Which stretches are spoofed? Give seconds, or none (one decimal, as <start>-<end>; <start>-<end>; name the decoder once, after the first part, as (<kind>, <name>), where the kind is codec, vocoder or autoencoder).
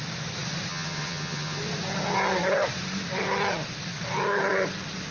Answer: 0.7-1.6 (vocoder, HiFi-GAN)